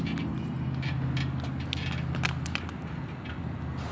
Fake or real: real